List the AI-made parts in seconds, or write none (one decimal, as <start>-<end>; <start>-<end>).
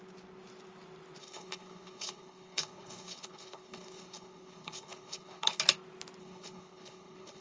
1.2-5.6; 6.2-7.4